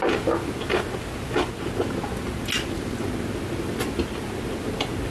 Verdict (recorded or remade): recorded